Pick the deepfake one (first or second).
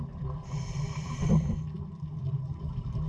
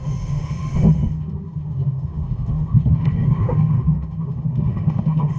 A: second